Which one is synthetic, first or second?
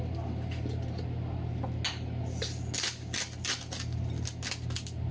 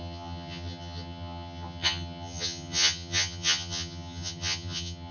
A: second